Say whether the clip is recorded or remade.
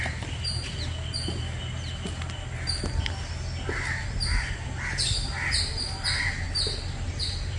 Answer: recorded